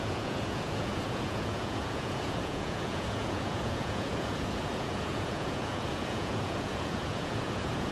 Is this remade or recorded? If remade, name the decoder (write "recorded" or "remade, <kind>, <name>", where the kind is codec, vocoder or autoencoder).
remade, vocoder, Vocos